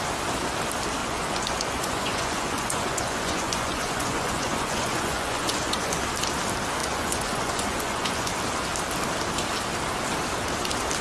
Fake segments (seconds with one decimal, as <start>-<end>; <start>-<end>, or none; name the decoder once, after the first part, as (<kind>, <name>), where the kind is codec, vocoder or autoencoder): 1.0-6.0 (vocoder, Vocos); 6.8-8.3